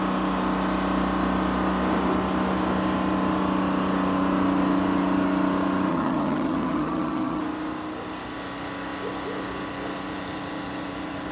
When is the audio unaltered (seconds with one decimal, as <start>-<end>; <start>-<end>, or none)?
0.0-5.9; 7.4-11.3